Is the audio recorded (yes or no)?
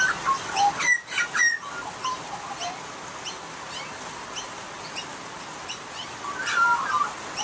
yes